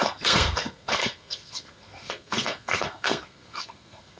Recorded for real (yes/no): no